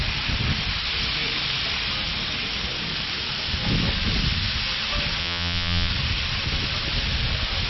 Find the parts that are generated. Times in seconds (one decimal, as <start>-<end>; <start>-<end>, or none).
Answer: 5.2-5.9